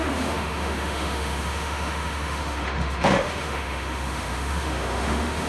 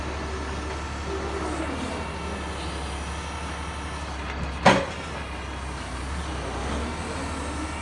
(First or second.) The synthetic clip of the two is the first